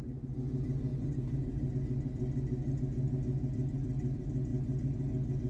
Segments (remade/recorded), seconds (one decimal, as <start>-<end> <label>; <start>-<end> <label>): 0.0-0.9 recorded; 0.9-1.7 remade; 1.7-5.5 recorded